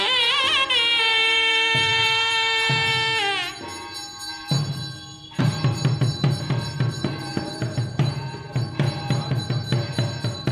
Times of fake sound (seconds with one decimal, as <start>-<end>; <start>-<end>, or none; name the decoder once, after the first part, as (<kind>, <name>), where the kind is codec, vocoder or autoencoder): 0.0-2.9 (vocoder, BigVGAN v2); 5.4-10.5